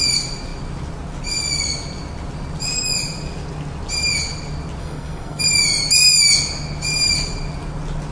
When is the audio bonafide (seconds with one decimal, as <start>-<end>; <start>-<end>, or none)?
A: 0.0-4.8; 5.4-8.1